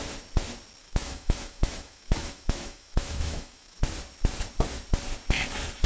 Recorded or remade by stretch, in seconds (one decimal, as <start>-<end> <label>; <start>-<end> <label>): 0.0-0.8 recorded; 0.8-3.8 remade; 3.8-5.9 recorded